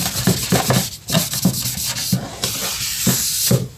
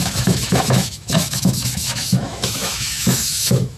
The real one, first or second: first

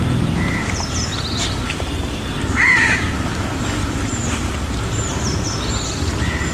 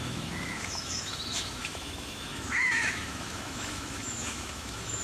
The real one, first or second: first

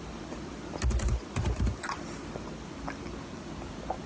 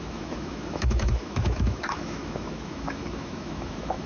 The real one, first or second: first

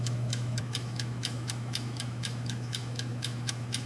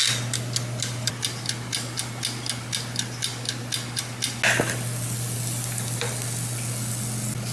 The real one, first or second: second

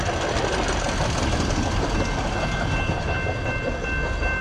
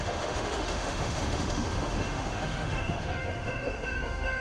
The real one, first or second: first